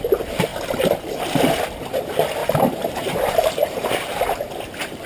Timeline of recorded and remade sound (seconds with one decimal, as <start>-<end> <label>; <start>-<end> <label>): 0.0-2.4 recorded; 2.4-3.9 remade; 3.9-5.1 recorded